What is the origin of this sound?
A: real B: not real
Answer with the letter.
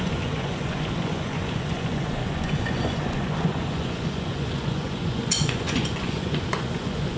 B